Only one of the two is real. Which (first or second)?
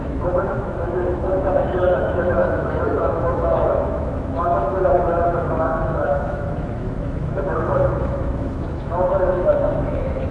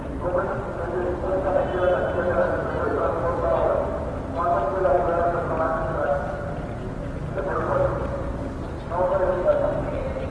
second